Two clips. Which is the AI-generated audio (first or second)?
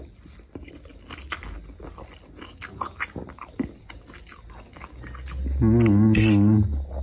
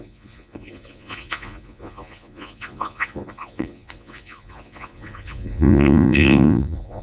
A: second